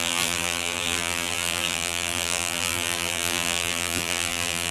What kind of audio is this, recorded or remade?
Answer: remade